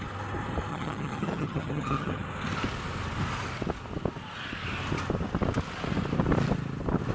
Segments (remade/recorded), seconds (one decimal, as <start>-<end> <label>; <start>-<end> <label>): 0.0-0.7 recorded; 0.7-2.2 remade; 2.2-7.1 recorded